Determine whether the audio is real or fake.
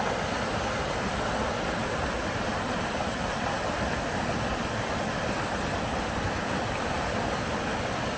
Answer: real